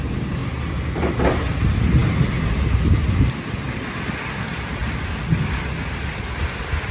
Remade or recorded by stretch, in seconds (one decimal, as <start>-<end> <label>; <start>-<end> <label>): 0.0-6.9 recorded